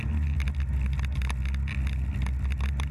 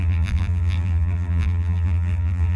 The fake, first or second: second